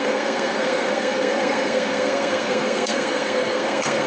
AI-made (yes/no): yes